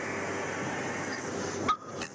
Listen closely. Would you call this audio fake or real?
real